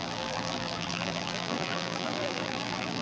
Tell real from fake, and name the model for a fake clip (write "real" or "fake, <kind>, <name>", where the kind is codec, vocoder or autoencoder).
fake, vocoder, BigVGAN v2